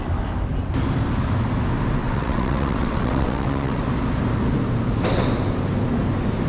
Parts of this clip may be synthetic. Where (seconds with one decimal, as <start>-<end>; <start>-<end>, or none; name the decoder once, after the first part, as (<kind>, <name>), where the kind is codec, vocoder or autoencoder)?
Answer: 2.0-3.8 (vocoder, WaveNeXt)

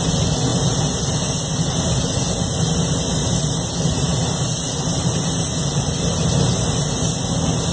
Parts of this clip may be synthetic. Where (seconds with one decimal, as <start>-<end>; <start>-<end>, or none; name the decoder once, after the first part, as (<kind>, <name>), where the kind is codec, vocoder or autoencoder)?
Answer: 4.1-4.7 (vocoder, BigVGAN v2)

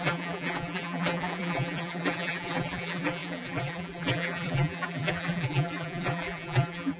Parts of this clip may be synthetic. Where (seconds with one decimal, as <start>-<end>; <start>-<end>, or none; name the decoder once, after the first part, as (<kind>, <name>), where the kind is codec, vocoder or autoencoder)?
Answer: 0.0-7.0 (vocoder, BigVGAN v2)

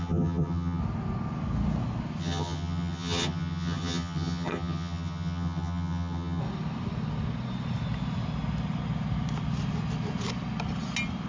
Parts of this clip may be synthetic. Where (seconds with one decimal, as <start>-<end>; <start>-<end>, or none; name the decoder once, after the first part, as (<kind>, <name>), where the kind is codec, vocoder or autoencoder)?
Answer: 0.0-0.8 (vocoder, HiFi-GAN); 2.2-6.4

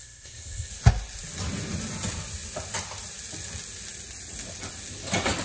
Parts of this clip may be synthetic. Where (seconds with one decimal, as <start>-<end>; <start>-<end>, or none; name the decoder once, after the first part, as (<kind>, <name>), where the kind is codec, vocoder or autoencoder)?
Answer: 0.0-0.7 (codec, ZipCodec)